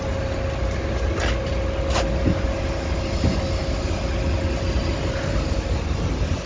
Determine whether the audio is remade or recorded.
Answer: recorded